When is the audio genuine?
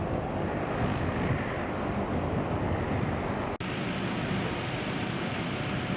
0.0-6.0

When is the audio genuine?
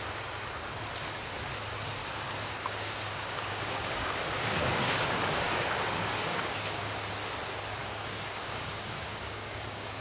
0.0-2.0; 6.9-7.8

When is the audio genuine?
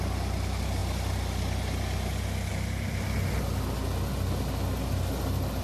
0.0-5.6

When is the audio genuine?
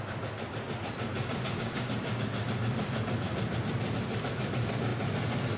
0.0-1.1; 2.2-5.6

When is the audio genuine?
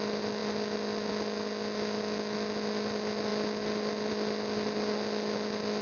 0.0-5.8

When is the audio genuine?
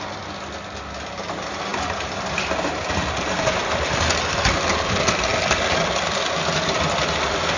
0.0-7.6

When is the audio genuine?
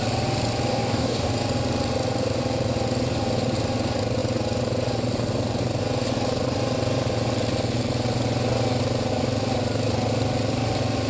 0.0-0.7; 1.3-11.1